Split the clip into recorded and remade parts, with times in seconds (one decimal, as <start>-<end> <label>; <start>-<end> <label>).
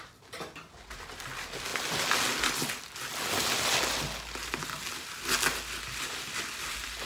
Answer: 0.0-7.0 recorded